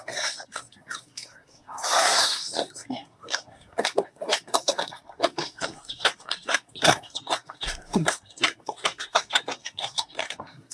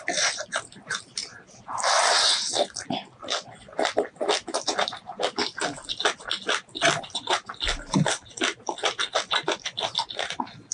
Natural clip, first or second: second